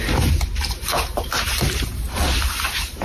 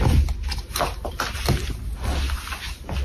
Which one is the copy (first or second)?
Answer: first